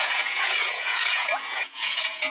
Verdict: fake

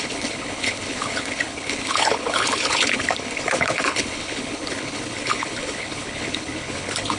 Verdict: fake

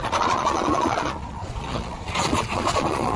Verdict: fake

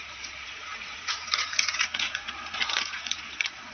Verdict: fake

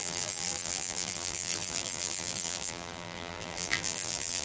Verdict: fake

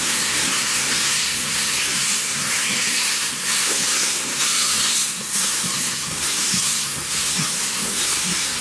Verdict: fake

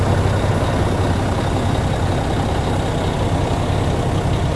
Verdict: real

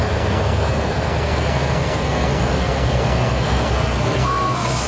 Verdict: fake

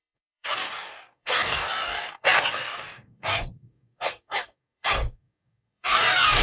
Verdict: fake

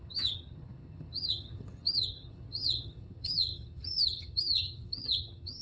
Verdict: fake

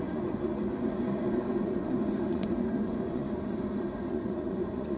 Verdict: fake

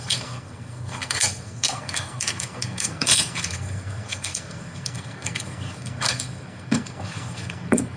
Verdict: fake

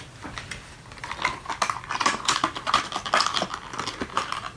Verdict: real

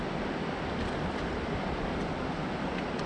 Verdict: real